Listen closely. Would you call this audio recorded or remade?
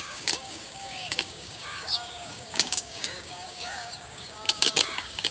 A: remade